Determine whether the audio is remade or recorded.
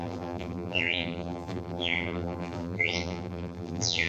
remade